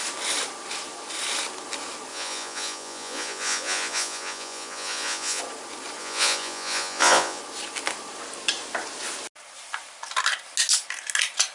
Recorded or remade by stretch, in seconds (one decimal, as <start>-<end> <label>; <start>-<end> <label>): 0.0-2.1 recorded; 2.1-5.4 remade; 5.4-6.0 recorded; 6.0-7.4 remade; 7.4-11.5 recorded